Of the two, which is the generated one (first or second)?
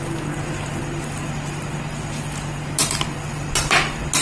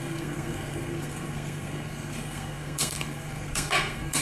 second